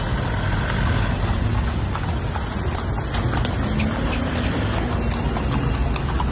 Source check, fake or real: real